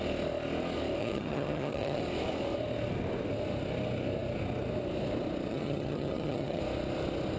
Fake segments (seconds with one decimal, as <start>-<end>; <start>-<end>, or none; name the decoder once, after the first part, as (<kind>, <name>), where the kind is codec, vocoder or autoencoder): 1.0-2.0 (vocoder, HiFi-GAN); 5.5-6.6